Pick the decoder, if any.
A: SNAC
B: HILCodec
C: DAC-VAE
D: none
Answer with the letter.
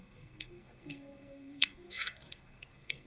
A